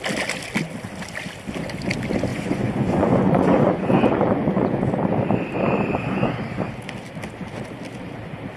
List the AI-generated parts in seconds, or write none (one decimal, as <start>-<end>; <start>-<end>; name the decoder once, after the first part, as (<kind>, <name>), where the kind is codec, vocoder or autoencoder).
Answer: 2.3-4.9 (vocoder, Vocos)